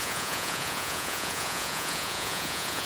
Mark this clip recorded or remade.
remade